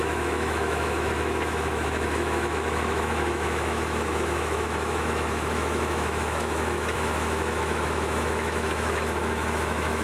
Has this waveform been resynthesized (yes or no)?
yes